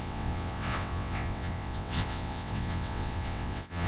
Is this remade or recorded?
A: remade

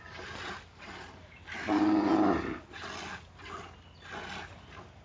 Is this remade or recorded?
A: recorded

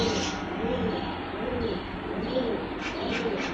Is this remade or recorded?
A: recorded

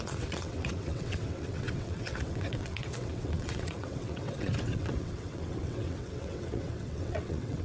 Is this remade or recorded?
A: remade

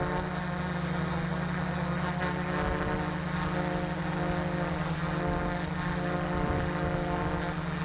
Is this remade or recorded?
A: recorded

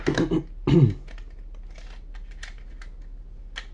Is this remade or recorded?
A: recorded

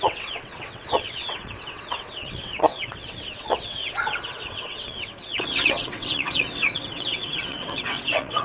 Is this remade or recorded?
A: remade